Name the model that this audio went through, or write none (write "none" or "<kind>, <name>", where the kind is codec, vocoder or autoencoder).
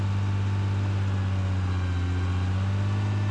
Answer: none